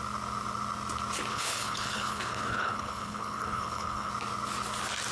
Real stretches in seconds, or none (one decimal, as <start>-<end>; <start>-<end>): 0.0-1.3; 4.1-5.1